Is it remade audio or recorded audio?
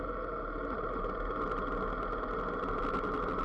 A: recorded